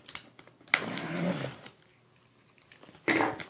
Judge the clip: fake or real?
real